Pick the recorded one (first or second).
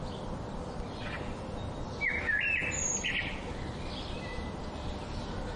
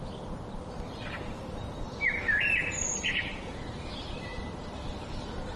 first